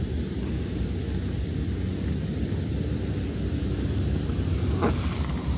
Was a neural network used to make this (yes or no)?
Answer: no